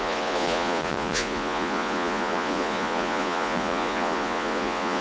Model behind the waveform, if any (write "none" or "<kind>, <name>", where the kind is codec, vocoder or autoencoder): vocoder, Vocos